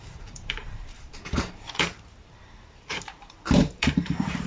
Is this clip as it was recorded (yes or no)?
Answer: no